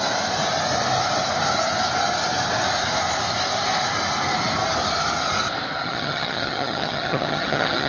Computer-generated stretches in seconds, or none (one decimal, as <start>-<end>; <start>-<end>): 5.8-7.9